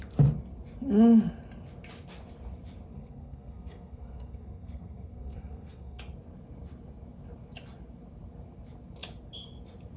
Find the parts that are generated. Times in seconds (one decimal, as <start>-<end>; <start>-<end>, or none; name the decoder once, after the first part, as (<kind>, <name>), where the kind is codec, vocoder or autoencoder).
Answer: 2.9-6.0 (codec, SNAC)